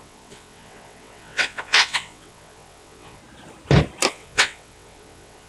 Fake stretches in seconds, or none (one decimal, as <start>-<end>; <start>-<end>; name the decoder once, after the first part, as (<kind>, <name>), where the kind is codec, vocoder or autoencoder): 0.0-3.2 (vocoder, WaveNeXt); 4.1-5.5